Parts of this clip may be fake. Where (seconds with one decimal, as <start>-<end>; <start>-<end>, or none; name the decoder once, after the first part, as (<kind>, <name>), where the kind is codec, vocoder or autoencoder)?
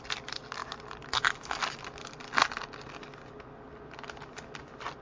none